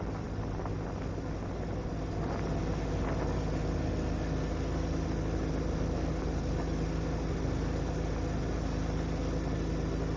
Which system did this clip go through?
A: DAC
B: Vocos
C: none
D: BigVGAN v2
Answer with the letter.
C